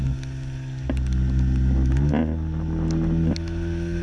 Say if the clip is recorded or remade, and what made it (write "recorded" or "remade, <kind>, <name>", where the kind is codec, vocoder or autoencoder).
recorded